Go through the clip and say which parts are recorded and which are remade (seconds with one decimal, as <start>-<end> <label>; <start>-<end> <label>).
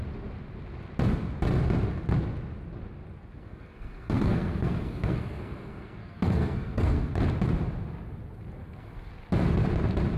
0.0-3.4 recorded; 3.4-7.2 remade; 7.2-8.6 recorded; 8.6-9.1 remade; 9.1-10.2 recorded